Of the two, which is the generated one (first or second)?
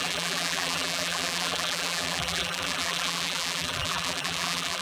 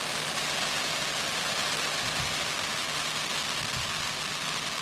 first